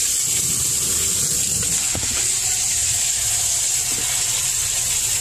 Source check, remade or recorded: recorded